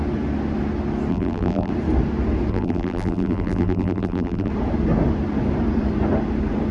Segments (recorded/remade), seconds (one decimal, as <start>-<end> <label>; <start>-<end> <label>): 0.0-1.1 recorded; 1.1-1.7 remade; 1.7-2.5 recorded; 2.5-4.5 remade; 4.5-6.7 recorded